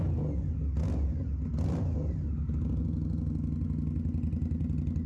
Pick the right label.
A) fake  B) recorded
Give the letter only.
B